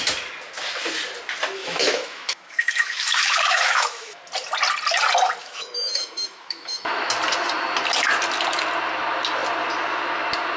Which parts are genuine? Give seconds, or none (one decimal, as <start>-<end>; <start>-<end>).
0.0-1.6; 4.2-5.4; 7.1-10.6